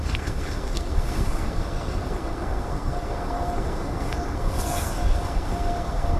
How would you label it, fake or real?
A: fake